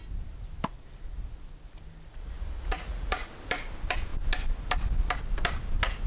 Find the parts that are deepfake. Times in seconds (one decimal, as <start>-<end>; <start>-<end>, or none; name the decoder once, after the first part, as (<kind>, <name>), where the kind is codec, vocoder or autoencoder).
2.1-3.3 (vocoder, Vocos)